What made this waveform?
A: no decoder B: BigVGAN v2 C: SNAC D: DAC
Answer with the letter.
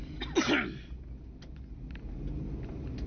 A